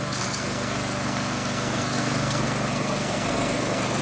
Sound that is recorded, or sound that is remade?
remade